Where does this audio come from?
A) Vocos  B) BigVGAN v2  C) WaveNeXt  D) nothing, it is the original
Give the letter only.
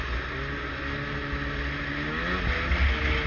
D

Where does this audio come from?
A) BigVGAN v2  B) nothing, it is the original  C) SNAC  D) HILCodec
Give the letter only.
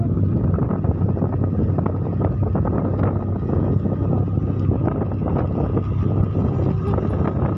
B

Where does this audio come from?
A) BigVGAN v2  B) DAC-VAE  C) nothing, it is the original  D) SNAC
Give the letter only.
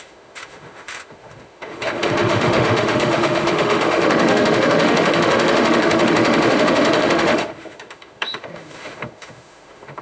B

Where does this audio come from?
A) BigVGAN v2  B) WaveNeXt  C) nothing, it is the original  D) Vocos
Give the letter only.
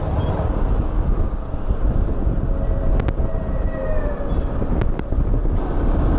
C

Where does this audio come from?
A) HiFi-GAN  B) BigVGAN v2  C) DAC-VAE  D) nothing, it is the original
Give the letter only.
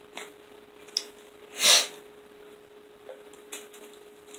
D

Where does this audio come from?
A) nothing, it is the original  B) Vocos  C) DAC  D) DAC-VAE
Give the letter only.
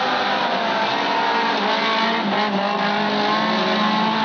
A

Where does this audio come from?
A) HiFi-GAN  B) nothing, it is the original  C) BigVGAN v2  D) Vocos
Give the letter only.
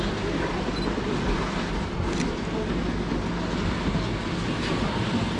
B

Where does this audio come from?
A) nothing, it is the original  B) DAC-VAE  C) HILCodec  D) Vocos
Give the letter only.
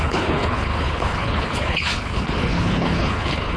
C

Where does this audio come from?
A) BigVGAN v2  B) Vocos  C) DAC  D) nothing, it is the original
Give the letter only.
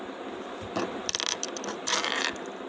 A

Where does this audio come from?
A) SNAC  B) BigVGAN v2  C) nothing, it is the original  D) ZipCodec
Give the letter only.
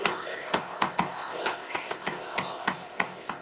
D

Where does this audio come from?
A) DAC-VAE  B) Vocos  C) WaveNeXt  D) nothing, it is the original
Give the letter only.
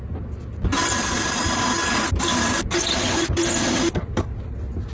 D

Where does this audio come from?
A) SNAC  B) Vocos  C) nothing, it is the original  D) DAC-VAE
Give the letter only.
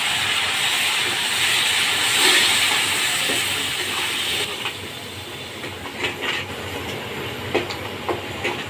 C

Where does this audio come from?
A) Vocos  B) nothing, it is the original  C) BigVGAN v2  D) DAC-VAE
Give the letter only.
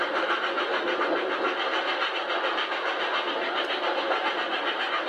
C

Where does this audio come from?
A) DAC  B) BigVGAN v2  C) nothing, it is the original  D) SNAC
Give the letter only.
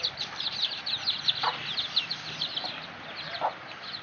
B